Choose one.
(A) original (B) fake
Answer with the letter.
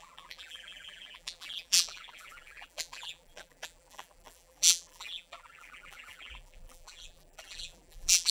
B